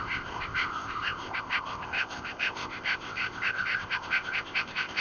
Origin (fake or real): fake